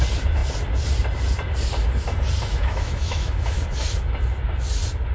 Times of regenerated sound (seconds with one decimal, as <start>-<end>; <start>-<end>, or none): 2.5-3.6